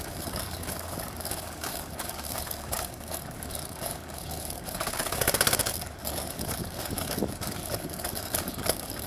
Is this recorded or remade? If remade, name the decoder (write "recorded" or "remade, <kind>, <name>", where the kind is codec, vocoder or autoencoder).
remade, codec, DAC